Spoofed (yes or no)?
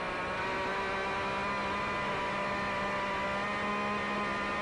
no